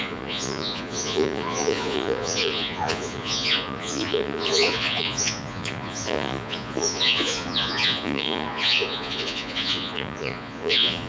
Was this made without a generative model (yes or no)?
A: no